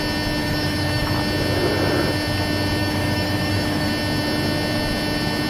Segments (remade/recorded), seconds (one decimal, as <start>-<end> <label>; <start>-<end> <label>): 0.0-0.4 recorded; 0.4-1.2 remade; 1.2-2.8 recorded; 2.8-3.9 remade; 3.9-5.5 recorded